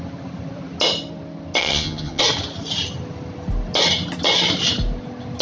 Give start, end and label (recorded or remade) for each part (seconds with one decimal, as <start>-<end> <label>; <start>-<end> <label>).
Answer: 0.0-1.6 recorded; 1.6-2.2 remade; 2.2-5.4 recorded